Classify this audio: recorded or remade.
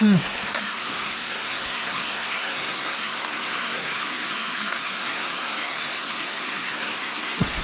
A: remade